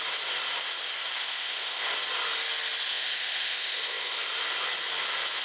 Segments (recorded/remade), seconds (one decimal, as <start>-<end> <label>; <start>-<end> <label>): 0.0-1.2 recorded; 1.2-1.9 remade; 1.9-2.9 recorded; 2.9-4.3 remade; 4.3-5.4 recorded